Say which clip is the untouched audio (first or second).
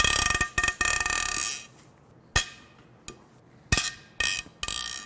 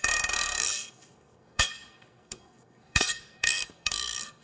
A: first